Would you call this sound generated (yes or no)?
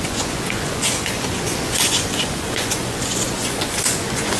yes